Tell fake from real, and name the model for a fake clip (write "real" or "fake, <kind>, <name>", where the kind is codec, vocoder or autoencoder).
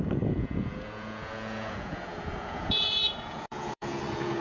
fake, vocoder, Vocos